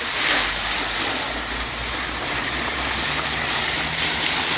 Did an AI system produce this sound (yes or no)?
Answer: no